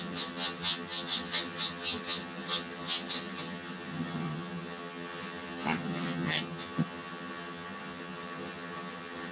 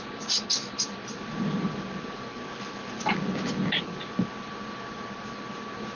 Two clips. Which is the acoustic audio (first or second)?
second